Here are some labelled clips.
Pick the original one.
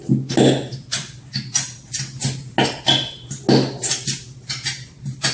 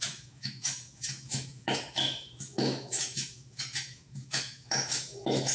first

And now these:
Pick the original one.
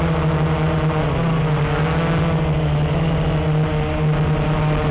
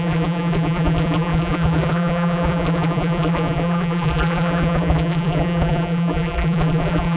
first